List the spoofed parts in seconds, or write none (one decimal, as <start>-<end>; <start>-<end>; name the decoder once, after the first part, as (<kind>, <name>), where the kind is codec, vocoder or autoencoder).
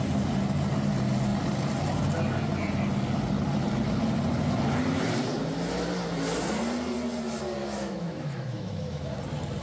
7.6-9.2 (autoencoder, DAC-VAE)